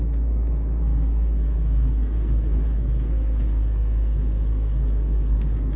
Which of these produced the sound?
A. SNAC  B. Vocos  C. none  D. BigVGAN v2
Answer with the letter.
A